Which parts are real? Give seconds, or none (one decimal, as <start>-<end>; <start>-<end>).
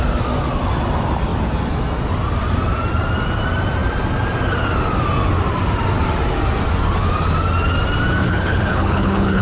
0.0-8.2